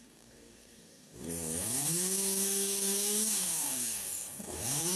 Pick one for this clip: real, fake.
fake